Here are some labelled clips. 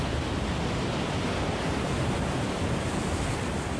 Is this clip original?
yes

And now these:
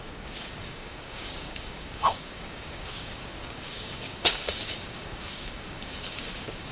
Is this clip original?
no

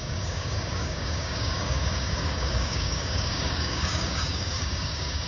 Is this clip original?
no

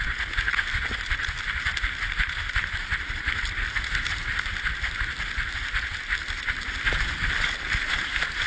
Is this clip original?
yes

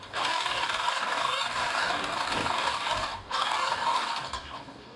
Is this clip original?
no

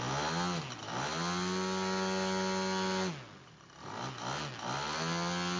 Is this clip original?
yes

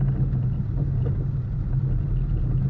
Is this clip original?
yes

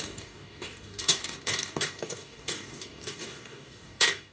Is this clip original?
no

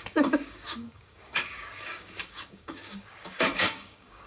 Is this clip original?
no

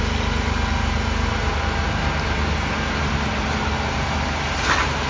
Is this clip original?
yes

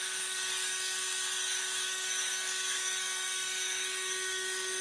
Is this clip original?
no